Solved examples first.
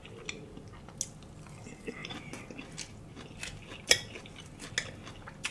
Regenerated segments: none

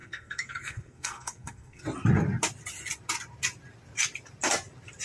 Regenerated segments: 0.0-1.8

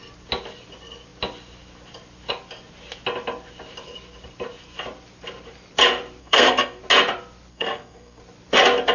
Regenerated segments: 6.2-6.8; 7.5-8.2

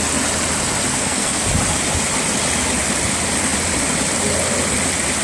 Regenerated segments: 0.9-1.5

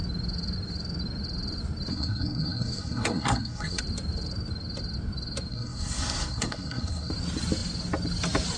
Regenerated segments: 1.9-3.8; 5.5-7.1